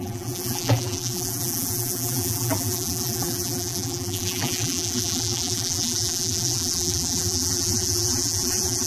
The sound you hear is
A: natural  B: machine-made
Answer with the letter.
B